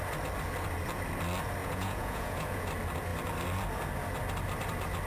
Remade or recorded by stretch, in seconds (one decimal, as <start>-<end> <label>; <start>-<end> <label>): 0.0-1.6 recorded; 1.6-2.7 remade; 2.7-5.1 recorded